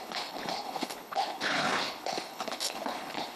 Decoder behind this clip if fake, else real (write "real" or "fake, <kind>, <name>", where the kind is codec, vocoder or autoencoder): fake, codec, HILCodec